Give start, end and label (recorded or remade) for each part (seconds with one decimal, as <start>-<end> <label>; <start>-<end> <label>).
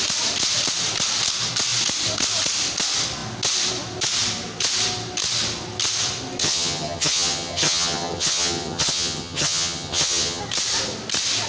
0.0-6.4 recorded; 6.4-10.4 remade; 10.4-11.5 recorded